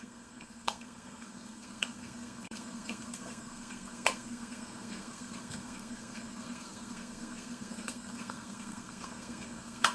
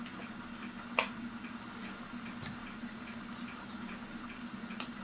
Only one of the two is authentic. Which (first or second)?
second